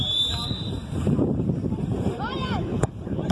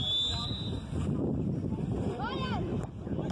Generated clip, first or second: first